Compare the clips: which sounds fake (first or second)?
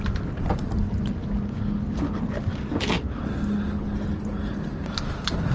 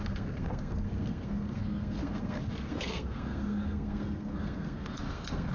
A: second